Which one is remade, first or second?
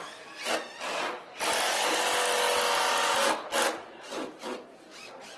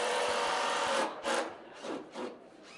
second